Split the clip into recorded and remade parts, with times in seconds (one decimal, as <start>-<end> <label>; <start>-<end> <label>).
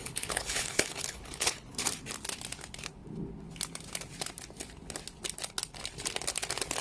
0.0-1.8 remade; 1.8-6.8 recorded